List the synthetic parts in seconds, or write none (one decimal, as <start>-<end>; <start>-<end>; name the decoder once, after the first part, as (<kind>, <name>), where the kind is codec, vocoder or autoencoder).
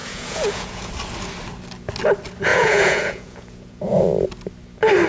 0.0-0.9 (vocoder, Vocos); 2.5-4.0